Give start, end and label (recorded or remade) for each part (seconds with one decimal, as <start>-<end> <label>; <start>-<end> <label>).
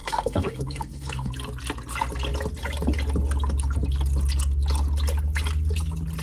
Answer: 0.0-1.3 remade; 1.3-6.2 recorded